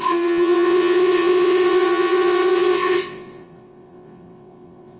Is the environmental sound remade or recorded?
remade